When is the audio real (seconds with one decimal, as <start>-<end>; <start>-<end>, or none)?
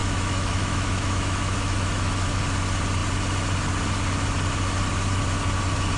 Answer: 2.4-6.0